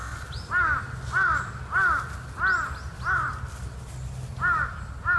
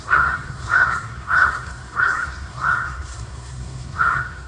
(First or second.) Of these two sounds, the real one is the first